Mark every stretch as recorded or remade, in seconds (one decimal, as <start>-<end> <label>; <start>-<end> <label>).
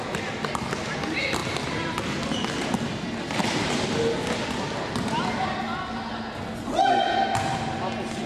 0.0-8.3 recorded